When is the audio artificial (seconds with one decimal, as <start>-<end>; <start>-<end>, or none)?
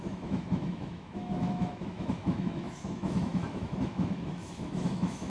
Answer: 0.0-5.3